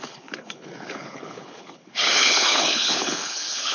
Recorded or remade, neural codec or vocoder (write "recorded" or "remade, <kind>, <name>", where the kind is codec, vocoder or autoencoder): remade, codec, HILCodec